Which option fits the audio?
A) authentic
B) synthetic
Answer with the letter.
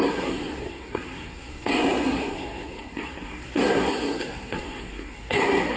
B